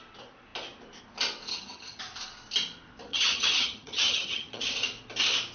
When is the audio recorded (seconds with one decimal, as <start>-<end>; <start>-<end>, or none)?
0.0-1.5; 2.0-3.1; 4.6-5.5